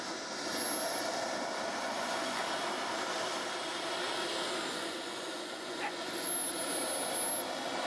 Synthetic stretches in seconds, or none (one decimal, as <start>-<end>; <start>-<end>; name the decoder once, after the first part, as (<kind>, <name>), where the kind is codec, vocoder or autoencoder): 1.8-2.4 (vocoder, Vocos); 4.7-6.3